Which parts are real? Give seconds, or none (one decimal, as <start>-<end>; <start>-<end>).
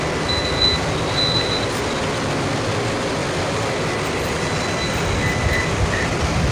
0.0-6.5